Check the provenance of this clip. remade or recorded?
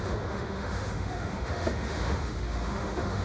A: remade